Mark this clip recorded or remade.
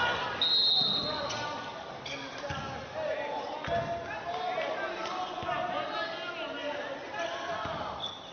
recorded